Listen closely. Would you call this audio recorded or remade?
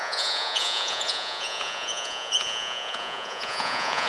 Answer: remade